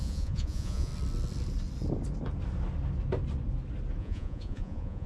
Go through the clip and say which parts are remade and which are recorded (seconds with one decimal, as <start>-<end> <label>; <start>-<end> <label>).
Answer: 0.0-0.9 remade; 0.9-4.0 recorded; 4.0-5.1 remade

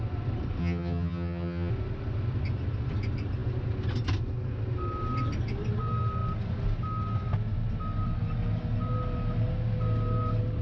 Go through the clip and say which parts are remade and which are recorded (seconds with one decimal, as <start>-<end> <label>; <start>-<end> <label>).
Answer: 0.0-0.6 recorded; 0.6-1.7 remade; 1.7-10.6 recorded

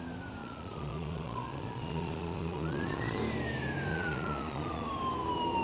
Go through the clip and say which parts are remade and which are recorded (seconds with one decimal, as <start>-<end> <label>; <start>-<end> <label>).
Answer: 0.0-0.4 recorded; 0.4-3.2 remade; 3.2-3.9 recorded; 3.9-4.9 remade; 4.9-5.6 recorded